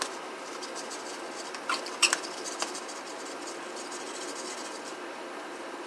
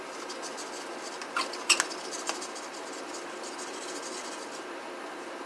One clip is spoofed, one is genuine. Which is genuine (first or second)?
second